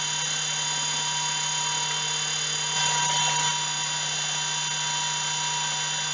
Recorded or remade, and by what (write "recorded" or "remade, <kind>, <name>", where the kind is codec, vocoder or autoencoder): recorded